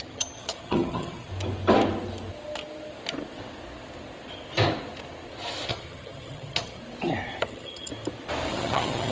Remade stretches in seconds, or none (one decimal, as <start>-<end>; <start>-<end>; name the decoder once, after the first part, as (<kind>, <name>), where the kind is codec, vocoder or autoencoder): 0.0-1.3 (vocoder, HiFi-GAN); 5.7-6.8; 7.4-7.9; 8.5-9.1

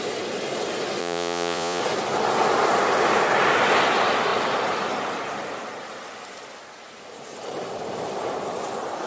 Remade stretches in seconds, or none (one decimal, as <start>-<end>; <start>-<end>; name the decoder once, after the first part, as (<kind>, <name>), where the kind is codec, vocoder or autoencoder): 1.0-1.8 (vocoder, Vocos)